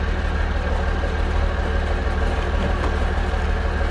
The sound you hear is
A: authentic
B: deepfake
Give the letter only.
A